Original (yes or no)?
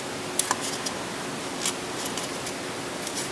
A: yes